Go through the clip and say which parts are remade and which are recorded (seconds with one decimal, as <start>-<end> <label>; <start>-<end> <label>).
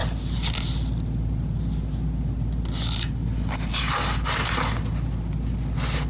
0.0-6.1 recorded